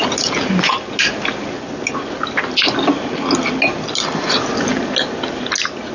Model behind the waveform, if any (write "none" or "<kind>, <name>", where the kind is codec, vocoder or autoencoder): none